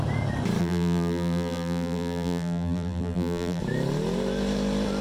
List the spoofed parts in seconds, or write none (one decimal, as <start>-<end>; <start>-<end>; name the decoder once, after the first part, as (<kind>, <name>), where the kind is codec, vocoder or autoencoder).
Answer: 0.6-3.6 (vocoder, BigVGAN v2)